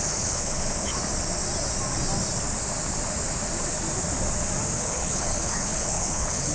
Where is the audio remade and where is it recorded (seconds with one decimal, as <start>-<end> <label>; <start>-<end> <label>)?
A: 0.0-0.9 remade; 0.9-4.8 recorded; 4.8-6.5 remade